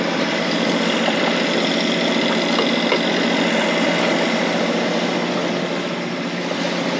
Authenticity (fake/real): real